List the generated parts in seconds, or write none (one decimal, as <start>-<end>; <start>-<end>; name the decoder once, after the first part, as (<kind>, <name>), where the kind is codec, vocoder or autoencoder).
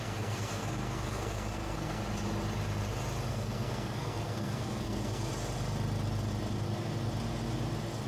0.0-2.0 (codec, SNAC); 3.3-5.3